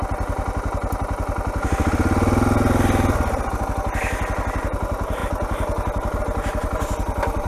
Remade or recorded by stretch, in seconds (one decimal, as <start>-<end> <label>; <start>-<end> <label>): 0.0-7.5 recorded